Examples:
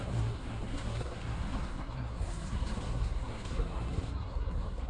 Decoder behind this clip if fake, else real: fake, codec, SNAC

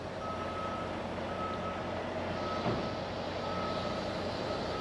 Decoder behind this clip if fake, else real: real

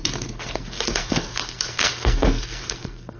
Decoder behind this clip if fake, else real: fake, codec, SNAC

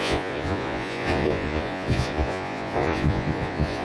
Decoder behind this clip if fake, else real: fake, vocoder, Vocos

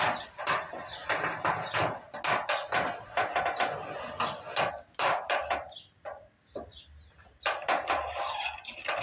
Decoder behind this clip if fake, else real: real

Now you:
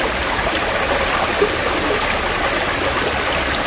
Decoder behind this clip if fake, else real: real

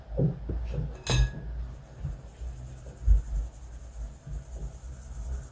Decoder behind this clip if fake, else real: real